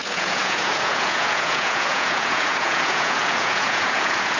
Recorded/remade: remade